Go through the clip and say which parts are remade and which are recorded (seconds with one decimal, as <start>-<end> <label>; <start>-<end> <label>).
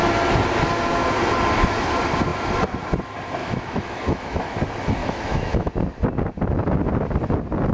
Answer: 0.0-3.4 recorded; 3.4-4.6 remade; 4.6-5.0 recorded; 5.0-5.7 remade; 5.7-7.7 recorded